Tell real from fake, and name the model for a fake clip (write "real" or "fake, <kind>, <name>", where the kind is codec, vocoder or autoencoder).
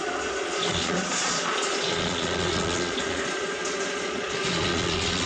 fake, vocoder, Vocos